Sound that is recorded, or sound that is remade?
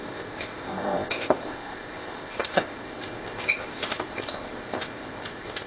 remade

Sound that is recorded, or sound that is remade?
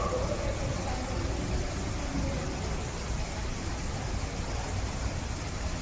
recorded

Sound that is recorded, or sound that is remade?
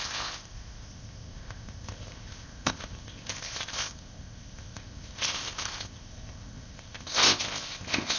remade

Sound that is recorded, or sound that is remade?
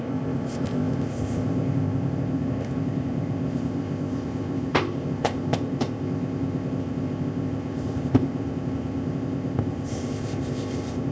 remade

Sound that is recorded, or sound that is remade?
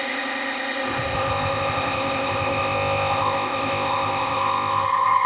remade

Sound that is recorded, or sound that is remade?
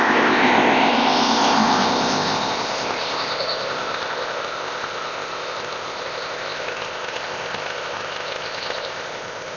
remade